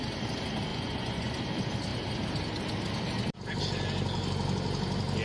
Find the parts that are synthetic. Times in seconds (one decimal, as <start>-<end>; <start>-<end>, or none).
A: 0.7-1.3